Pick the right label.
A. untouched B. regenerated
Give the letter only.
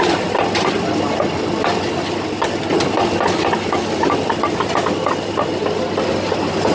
A